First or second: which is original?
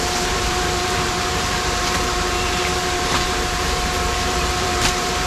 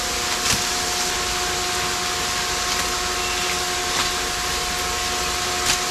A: second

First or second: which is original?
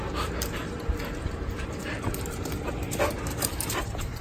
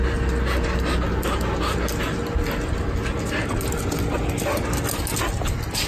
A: second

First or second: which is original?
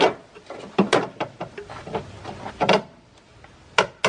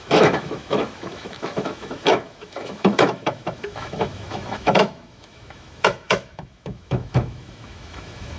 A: first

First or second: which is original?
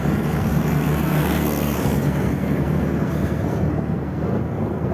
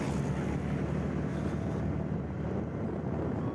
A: second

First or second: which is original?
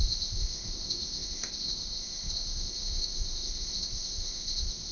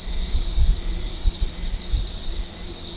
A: second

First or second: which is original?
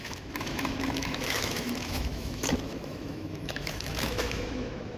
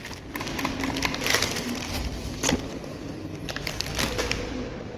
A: second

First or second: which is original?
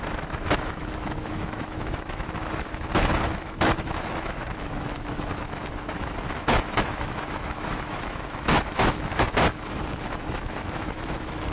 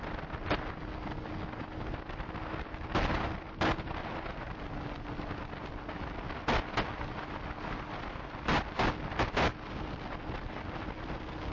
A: second